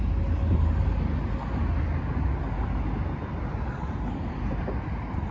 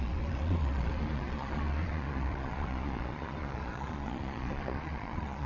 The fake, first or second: second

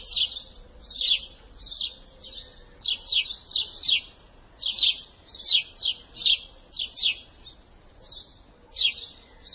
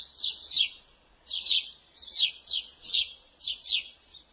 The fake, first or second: second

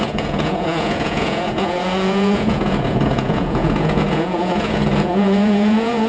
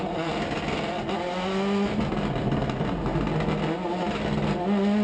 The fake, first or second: first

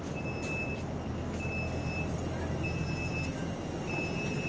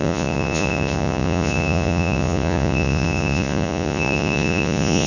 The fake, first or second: second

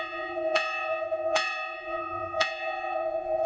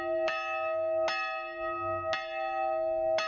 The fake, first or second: first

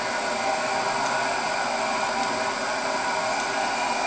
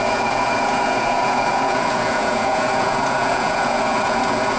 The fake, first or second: second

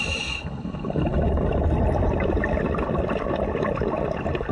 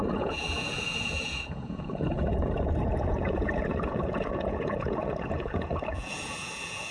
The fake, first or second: second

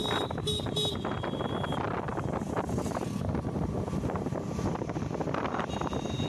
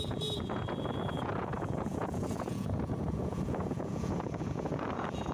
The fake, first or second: second